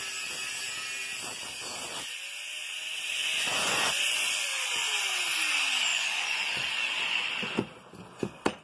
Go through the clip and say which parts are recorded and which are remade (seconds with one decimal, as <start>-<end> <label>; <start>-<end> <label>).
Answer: 0.0-3.2 recorded; 3.2-4.9 remade; 4.9-5.9 recorded; 5.9-7.5 remade; 7.5-8.6 recorded